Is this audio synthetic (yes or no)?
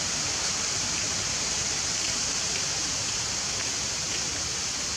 no